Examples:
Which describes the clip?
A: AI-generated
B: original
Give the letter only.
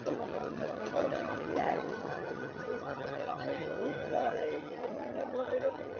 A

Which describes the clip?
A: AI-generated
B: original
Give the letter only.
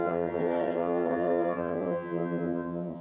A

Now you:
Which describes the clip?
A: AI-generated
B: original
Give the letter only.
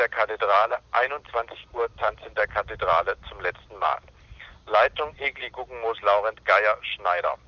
B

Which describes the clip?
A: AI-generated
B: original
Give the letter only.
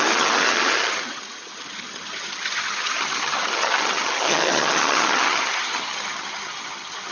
A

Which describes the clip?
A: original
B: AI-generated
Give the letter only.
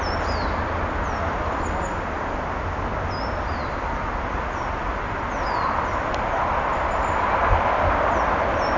A